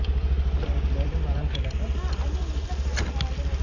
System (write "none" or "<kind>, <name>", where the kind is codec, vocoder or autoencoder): none